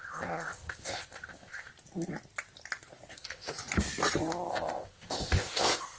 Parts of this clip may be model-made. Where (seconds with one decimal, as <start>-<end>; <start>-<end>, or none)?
0.0-1.7; 3.1-3.5; 4.5-6.0